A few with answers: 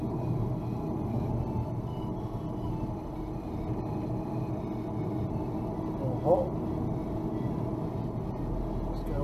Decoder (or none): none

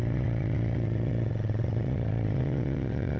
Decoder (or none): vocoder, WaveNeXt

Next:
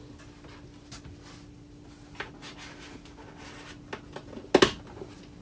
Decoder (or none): none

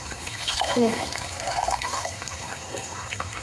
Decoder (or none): codec, SNAC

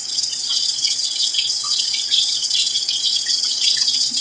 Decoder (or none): vocoder, WaveNeXt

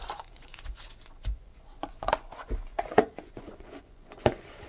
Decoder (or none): vocoder, Vocos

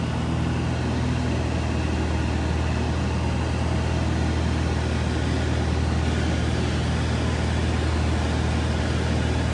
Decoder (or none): none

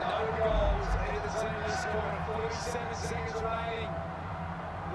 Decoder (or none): none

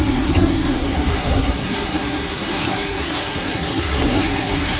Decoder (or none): codec, SNAC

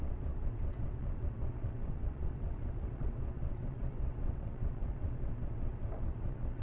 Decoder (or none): vocoder, WaveNeXt